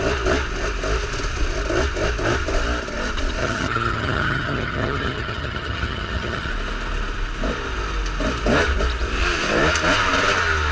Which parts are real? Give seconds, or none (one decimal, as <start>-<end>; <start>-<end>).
0.0-3.4; 6.5-10.7